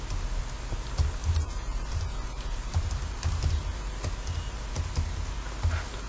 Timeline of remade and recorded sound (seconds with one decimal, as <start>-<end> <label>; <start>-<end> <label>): 0.0-1.2 recorded; 1.2-4.9 remade; 4.9-6.1 recorded